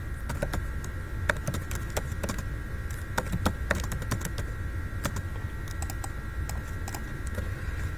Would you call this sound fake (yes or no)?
no